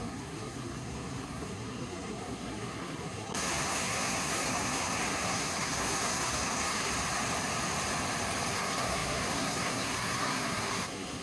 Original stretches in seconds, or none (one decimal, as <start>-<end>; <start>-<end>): 6.9-8.5